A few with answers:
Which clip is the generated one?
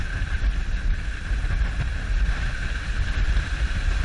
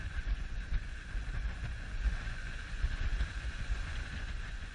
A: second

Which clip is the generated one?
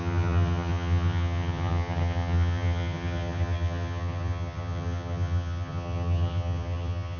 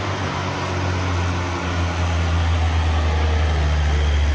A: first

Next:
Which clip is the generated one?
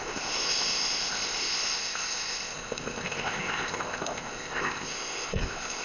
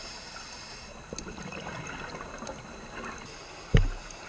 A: first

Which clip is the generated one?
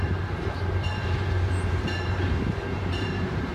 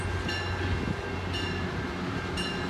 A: first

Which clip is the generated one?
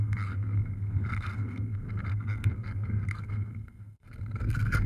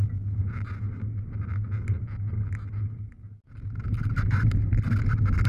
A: first